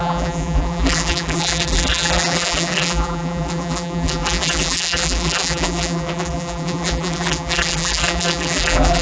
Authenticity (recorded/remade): remade